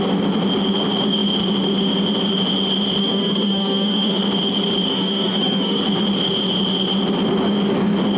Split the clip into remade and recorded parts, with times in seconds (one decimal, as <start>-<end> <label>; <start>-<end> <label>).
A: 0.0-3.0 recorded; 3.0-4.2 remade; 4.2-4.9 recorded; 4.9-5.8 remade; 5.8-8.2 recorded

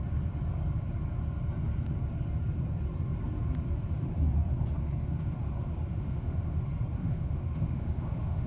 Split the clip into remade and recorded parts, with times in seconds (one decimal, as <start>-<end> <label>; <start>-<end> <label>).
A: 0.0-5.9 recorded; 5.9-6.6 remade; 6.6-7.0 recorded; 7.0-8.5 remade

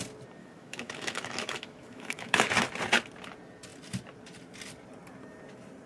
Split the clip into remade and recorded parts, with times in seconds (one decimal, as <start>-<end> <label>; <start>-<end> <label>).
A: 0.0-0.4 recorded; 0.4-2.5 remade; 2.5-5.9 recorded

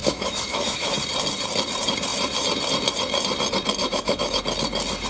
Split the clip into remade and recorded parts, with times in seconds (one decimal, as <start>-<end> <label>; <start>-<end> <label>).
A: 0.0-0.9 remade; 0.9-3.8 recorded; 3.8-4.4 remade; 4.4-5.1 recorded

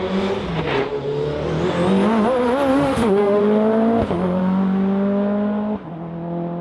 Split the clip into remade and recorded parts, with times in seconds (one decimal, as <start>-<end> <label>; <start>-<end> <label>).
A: 0.0-2.7 recorded; 2.7-3.4 remade; 3.4-6.6 recorded